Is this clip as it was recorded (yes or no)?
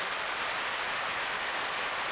yes